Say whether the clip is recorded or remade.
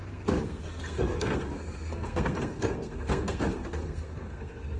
remade